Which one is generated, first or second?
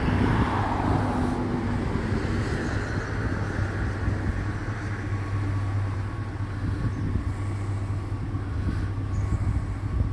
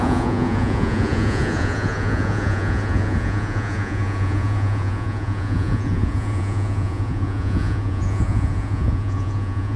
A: second